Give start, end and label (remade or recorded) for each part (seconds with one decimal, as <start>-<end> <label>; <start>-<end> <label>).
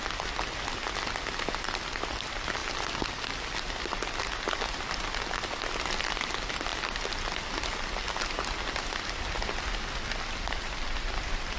0.0-11.6 recorded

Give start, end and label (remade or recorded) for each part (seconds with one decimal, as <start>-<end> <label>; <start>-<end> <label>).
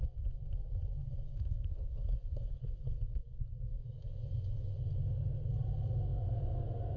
0.0-1.0 recorded; 1.0-4.7 remade; 4.7-7.0 recorded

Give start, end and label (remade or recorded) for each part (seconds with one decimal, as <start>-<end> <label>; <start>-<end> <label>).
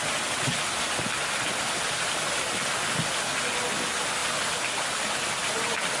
0.0-6.0 recorded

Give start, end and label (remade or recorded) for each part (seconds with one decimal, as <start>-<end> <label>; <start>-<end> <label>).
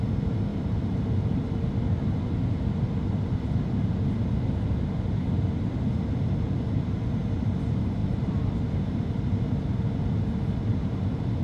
0.0-0.5 recorded; 0.5-1.5 remade; 1.5-8.0 recorded; 8.0-8.6 remade; 8.6-11.4 recorded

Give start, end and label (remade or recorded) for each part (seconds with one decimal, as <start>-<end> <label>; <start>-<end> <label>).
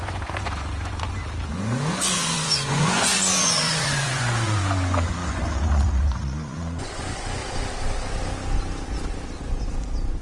0.0-1.2 remade; 1.2-1.9 recorded; 1.9-7.4 remade; 7.4-9.4 recorded; 9.4-10.2 remade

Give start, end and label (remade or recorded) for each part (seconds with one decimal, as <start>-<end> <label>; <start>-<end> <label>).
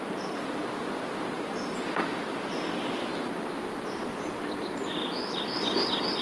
0.0-4.1 remade; 4.1-4.9 recorded; 4.9-6.2 remade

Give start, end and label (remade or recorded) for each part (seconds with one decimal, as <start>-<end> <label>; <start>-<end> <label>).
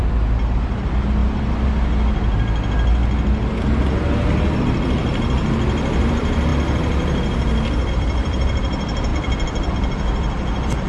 0.0-1.2 remade; 1.2-4.6 recorded; 4.6-6.5 remade; 6.5-7.9 recorded; 7.9-10.9 remade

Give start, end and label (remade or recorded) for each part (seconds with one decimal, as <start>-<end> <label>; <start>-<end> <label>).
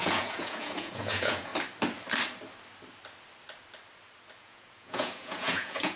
0.0-1.5 remade; 1.5-4.4 recorded; 4.4-6.0 remade